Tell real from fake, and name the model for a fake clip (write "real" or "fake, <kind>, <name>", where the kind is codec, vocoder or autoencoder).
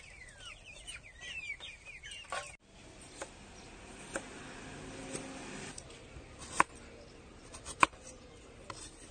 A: real